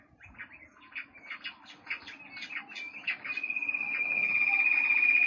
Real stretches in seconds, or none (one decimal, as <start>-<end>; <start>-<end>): 0.0-5.3